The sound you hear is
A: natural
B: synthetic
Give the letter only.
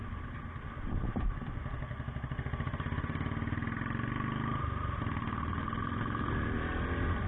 A